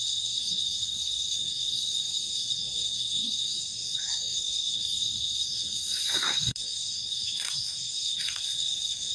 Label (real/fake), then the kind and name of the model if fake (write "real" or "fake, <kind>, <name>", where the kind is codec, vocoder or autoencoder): fake, codec, SNAC